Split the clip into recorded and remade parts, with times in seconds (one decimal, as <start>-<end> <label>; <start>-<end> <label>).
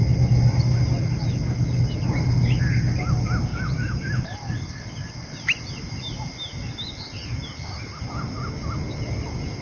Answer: 0.0-3.5 recorded; 3.5-4.4 remade; 4.4-9.6 recorded